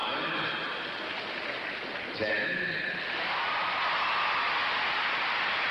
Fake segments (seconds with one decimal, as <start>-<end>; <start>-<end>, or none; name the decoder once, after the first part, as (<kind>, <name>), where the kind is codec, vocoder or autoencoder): 0.0-5.7 (vocoder, BigVGAN v2)